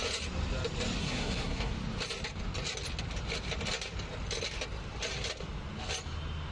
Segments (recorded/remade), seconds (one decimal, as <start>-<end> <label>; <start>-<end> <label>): 0.0-1.0 recorded; 1.0-1.7 remade; 1.7-6.5 recorded